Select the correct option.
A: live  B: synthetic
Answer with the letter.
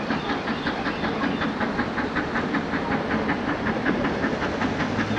A